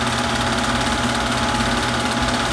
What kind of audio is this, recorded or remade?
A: recorded